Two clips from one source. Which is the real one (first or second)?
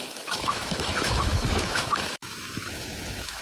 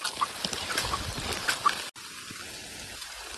second